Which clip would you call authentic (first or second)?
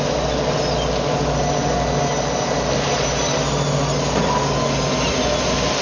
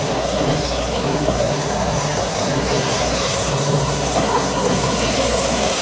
first